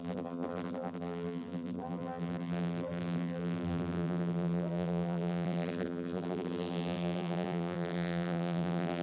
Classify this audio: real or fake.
fake